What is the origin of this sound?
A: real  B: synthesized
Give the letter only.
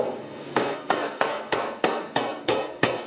B